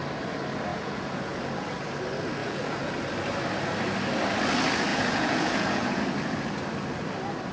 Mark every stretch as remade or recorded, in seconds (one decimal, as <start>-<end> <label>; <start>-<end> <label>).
0.0-0.7 recorded; 0.7-1.4 remade; 1.4-2.4 recorded; 2.4-2.9 remade; 2.9-4.9 recorded; 4.9-6.0 remade; 6.0-7.5 recorded